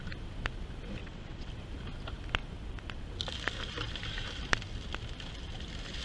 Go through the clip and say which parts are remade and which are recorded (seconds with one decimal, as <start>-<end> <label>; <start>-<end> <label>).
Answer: 0.0-1.0 recorded; 1.0-1.5 remade; 1.5-6.0 recorded